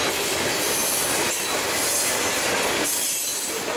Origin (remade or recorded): recorded